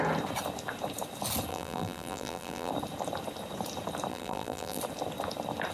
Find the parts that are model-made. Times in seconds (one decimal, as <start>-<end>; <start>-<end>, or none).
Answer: 1.5-2.7; 4.1-4.8